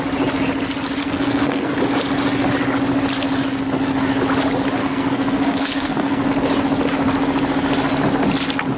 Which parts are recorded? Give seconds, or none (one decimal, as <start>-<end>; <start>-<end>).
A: 0.0-1.0; 1.8-4.8; 6.3-8.8